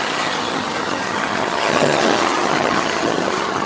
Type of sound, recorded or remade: remade